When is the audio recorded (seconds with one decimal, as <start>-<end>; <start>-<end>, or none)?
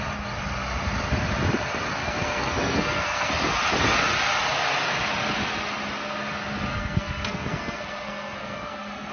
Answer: 0.0-2.0; 3.3-6.7